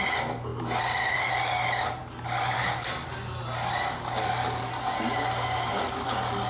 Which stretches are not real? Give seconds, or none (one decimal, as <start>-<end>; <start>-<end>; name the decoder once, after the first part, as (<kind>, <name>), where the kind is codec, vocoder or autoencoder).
none